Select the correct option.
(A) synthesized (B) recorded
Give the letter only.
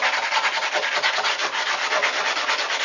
B